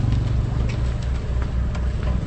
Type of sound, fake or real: real